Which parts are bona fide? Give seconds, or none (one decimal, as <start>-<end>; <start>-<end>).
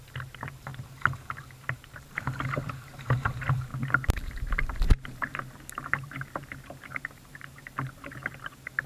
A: 0.7-1.8